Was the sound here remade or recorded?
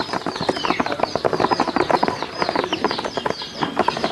recorded